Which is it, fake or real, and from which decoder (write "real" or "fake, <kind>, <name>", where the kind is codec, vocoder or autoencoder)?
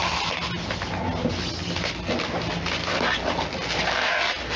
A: real